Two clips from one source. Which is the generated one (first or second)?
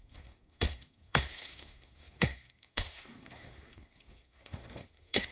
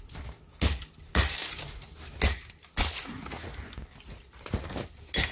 first